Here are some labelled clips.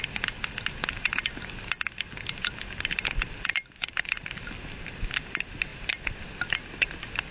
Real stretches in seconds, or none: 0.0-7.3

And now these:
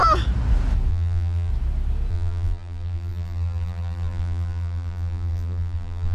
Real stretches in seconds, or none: 0.0-0.9; 1.5-2.1

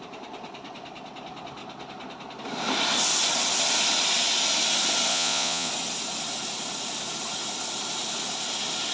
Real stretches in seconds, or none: 0.0-5.1; 5.7-8.9

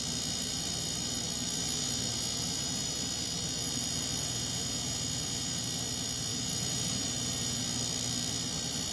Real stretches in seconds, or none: 0.0-4.2; 5.6-6.3; 7.6-8.9